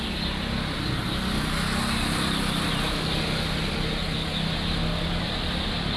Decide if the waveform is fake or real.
real